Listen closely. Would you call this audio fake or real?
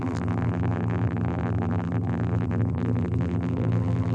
fake